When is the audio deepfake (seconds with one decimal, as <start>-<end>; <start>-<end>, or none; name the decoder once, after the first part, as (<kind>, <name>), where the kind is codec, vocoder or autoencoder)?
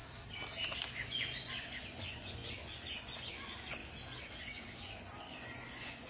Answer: 1.1-6.1 (vocoder, Vocos)